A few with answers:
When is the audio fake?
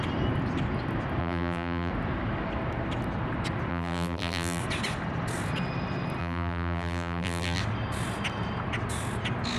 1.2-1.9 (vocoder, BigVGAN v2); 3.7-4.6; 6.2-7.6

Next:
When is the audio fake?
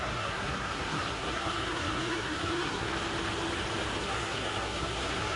0.0-2.9 (codec, SNAC); 4.0-5.4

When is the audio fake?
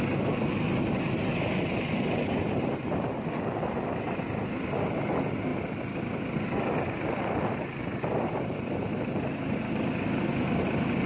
none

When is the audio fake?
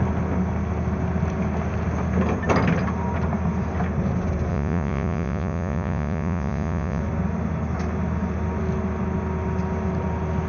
4.5-7.0 (vocoder, Vocos)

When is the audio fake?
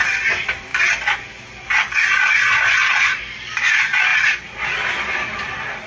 none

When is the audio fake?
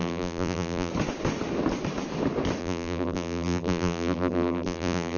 0.0-0.9 (vocoder, BigVGAN v2); 2.6-5.2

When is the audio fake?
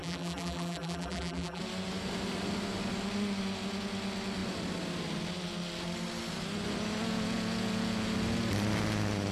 0.0-1.6 (vocoder, BigVGAN v2)